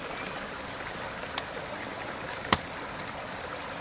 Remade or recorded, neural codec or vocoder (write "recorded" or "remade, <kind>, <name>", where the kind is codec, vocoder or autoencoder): recorded